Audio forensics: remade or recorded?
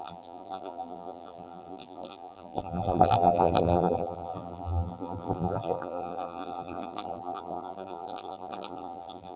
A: remade